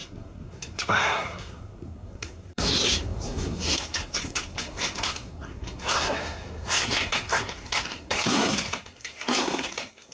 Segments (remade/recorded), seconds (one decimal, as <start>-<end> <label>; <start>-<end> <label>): 0.0-10.1 remade